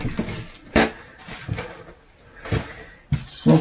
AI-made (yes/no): no